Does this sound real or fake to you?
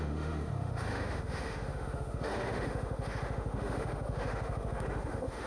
fake